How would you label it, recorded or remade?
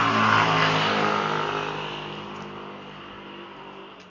recorded